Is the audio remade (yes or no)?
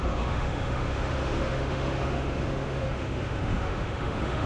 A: yes